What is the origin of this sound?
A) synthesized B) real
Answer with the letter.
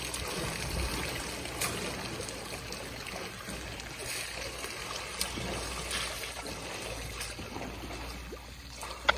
B